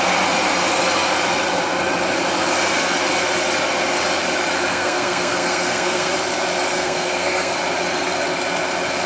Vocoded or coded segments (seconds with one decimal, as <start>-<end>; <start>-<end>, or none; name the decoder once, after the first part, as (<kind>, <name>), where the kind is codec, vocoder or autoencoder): 4.7-6.1 (codec, SNAC); 6.7-7.5